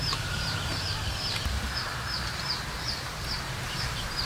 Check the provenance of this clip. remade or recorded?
remade